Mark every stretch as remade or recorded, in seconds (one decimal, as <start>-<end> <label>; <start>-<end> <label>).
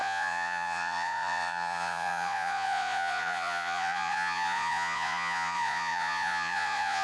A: 0.0-7.0 remade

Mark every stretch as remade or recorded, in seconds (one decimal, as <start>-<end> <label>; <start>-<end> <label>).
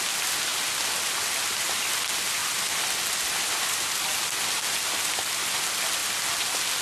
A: 0.0-6.8 recorded